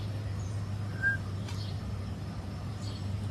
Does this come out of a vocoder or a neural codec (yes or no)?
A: yes